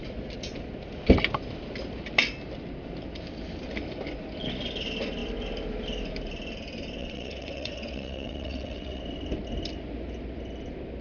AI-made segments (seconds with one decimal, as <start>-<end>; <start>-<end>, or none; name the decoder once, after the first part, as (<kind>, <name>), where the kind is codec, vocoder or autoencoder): 7.0-9.0 (vocoder, WaveNeXt)